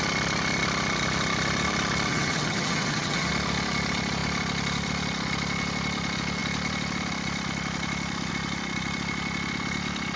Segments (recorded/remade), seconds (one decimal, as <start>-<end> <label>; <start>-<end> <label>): 0.0-2.1 recorded; 2.1-3.3 remade; 3.3-10.2 recorded